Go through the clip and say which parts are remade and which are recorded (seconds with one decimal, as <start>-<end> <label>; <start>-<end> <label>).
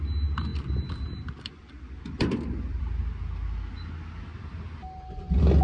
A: 0.0-0.5 recorded; 0.5-2.8 remade; 2.8-4.3 recorded; 4.3-4.8 remade; 4.8-5.6 recorded